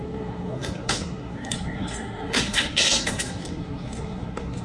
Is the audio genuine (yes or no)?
no